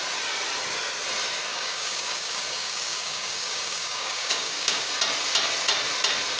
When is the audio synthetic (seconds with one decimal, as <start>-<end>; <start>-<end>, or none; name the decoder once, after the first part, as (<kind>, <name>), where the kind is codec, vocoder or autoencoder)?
1.5-4.9 (codec, DAC)